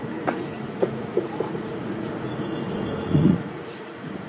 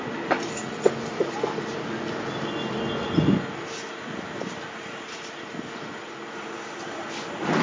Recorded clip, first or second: second